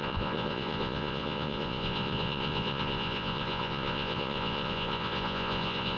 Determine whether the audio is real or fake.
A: fake